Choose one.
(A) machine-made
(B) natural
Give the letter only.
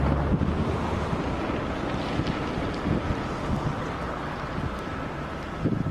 B